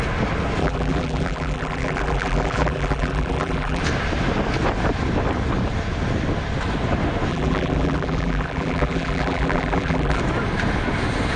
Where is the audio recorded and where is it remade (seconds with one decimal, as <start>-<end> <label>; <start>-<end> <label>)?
0.0-0.6 recorded; 0.6-3.8 remade; 3.8-7.3 recorded; 7.3-10.2 remade; 10.2-11.4 recorded